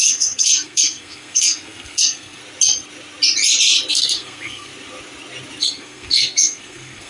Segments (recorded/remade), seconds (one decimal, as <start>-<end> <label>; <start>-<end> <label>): 0.0-2.4 remade; 2.4-3.9 recorded; 3.9-4.7 remade; 4.7-5.6 recorded; 5.6-7.1 remade